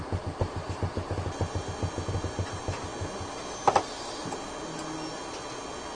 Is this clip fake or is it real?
real